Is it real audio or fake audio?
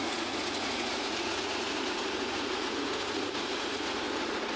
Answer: fake